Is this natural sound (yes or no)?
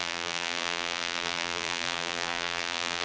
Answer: no